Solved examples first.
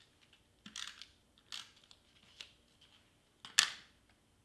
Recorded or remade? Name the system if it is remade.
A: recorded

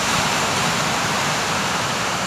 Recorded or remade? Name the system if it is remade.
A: remade, vocoder, BigVGAN v2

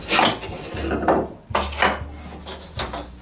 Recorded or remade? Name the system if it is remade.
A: recorded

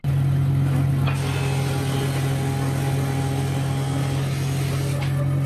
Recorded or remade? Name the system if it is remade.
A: recorded